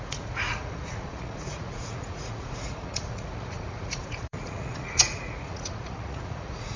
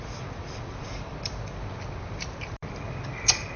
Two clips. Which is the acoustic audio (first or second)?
second